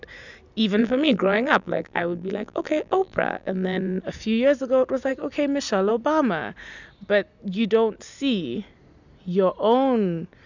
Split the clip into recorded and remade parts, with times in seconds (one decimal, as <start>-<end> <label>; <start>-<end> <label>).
0.0-0.8 recorded; 0.8-4.0 remade; 4.0-10.5 recorded